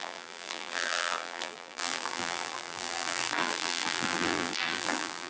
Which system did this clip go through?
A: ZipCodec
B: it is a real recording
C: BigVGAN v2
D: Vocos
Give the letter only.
C